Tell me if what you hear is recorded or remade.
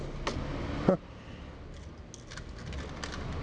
recorded